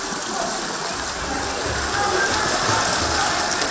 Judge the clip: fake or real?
real